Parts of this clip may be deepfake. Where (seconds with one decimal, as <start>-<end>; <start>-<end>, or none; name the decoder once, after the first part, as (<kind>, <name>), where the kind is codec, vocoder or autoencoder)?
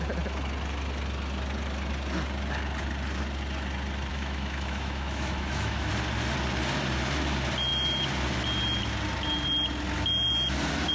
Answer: 4.1-5.9 (autoencoder, DAC-VAE)